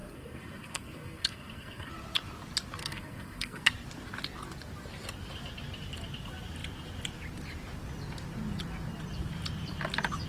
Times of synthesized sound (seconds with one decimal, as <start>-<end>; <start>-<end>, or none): 0.0-1.9; 2.8-3.7